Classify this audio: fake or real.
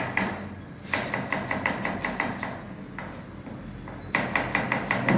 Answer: real